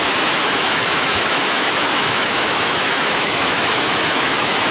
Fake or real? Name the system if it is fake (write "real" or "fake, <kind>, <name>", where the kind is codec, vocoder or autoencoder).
fake, autoencoder, DAC-VAE